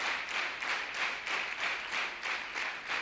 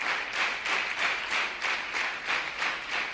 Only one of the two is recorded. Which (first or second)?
first